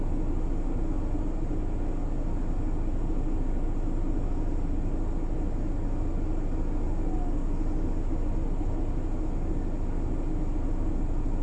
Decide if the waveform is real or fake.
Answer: real